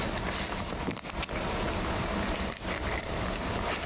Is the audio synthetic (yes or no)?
no